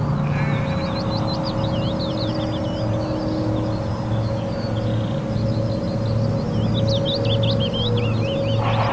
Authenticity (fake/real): real